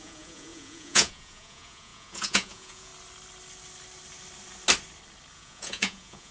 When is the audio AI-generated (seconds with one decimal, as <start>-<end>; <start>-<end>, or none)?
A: 0.0-2.9; 5.3-6.3